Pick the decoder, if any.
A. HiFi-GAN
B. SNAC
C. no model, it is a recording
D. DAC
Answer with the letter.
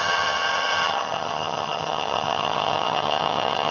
A